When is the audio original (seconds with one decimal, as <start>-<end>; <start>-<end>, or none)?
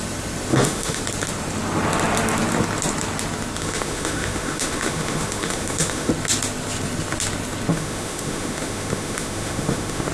0.0-0.5; 1.0-3.6; 6.1-7.7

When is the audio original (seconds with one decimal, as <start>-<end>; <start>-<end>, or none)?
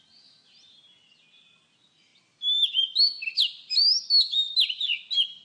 0.0-5.4